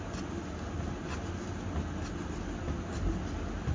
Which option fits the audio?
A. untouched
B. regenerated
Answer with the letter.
A